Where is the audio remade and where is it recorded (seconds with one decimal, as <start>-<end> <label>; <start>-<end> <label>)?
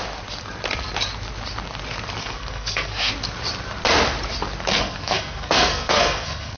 0.0-2.2 recorded; 2.2-3.1 remade; 3.1-4.7 recorded; 4.7-6.6 remade